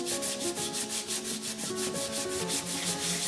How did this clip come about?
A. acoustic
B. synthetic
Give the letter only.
A